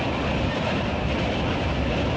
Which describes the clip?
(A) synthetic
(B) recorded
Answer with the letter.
B